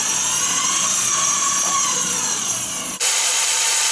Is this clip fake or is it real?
fake